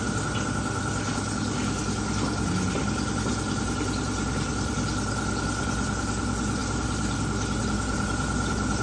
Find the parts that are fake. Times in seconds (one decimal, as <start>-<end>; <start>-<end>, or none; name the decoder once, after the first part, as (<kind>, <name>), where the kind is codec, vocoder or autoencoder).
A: none